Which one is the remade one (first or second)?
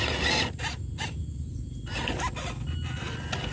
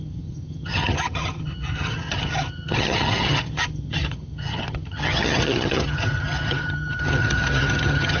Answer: second